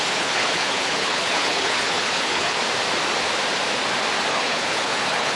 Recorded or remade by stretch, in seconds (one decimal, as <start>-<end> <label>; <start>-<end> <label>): 0.0-2.6 remade; 2.6-4.3 recorded; 4.3-5.4 remade